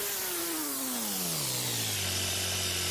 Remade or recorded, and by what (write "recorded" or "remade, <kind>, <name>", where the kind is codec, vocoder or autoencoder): recorded